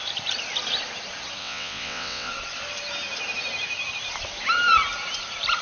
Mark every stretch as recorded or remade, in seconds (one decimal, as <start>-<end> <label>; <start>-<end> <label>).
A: 0.0-1.4 recorded; 1.4-2.3 remade; 2.3-5.6 recorded